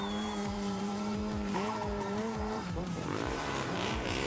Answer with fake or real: fake